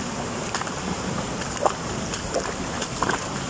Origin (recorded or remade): recorded